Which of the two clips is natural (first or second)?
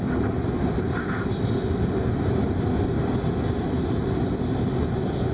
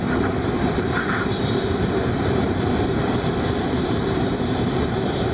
first